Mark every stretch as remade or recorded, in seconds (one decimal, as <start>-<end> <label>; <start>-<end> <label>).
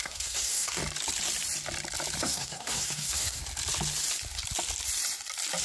0.0-0.8 remade; 0.8-2.2 recorded; 2.2-3.4 remade; 3.4-5.6 recorded